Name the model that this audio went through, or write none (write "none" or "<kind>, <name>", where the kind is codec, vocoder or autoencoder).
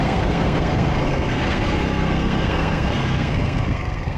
codec, SNAC